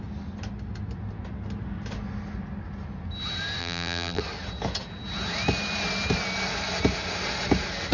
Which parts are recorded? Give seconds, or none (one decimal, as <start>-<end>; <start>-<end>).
0.0-3.6; 4.2-7.9